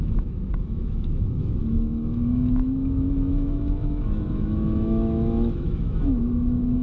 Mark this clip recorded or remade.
remade